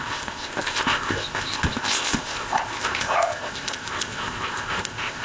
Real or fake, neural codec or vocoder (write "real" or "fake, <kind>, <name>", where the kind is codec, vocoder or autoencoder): fake, codec, ZipCodec